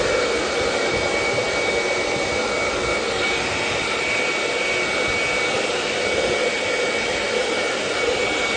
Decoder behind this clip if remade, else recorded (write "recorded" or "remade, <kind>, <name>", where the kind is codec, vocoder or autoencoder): recorded